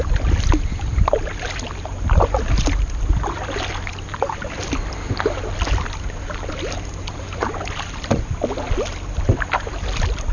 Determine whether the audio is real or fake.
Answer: real